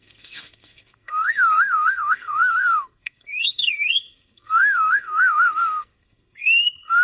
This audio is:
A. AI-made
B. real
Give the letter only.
A